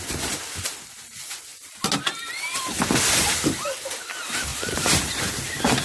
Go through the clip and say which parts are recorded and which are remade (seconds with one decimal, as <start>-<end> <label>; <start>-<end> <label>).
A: 0.0-4.5 recorded; 4.5-5.0 remade; 5.0-5.8 recorded